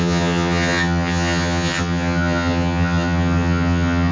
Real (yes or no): no